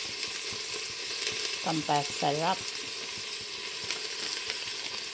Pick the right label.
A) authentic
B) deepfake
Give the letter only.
A